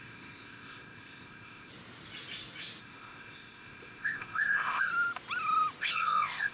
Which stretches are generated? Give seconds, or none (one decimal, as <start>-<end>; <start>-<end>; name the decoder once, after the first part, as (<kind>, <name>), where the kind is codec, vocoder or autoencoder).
0.0-1.7 (codec, ZipCodec); 2.8-4.9; 5.8-6.5

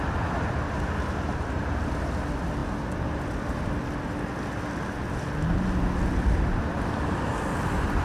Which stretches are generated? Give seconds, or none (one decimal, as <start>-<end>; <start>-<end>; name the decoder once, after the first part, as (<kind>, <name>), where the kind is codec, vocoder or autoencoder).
none

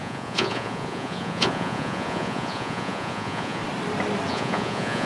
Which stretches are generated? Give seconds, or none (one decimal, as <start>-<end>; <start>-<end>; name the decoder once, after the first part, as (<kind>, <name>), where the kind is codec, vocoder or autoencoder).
0.0-3.6 (vocoder, Vocos); 4.3-5.1

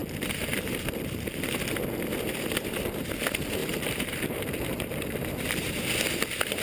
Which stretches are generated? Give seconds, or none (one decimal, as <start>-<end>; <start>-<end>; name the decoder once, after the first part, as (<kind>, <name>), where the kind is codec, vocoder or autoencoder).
3.6-5.9 (vocoder, BigVGAN v2)

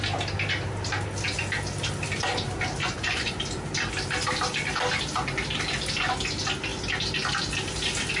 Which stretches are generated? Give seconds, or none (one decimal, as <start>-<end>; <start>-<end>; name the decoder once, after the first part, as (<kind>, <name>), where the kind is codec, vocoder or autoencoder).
2.8-3.3 (vocoder, Vocos)